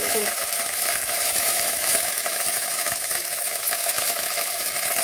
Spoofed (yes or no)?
yes